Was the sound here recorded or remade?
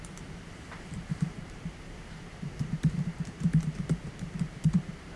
remade